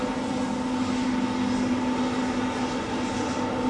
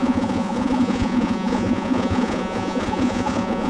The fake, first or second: second